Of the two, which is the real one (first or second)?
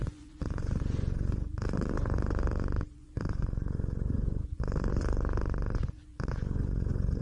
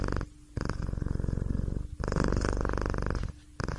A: second